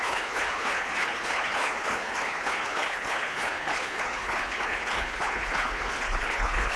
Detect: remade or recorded remade